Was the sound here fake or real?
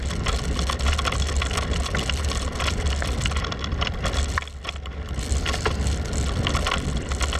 real